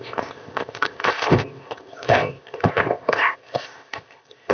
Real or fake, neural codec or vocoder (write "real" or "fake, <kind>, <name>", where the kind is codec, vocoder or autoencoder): fake, codec, ZipCodec